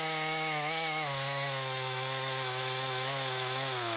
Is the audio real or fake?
fake